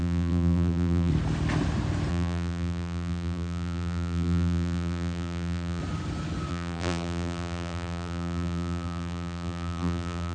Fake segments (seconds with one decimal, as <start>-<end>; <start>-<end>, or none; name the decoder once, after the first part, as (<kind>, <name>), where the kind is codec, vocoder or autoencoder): 0.0-1.1 (vocoder, BigVGAN v2); 2.1-5.8; 6.5-10.3